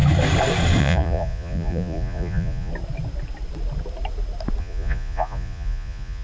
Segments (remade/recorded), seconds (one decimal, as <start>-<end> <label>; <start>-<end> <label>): 0.0-0.8 recorded; 0.8-2.7 remade; 2.7-4.6 recorded; 4.6-6.2 remade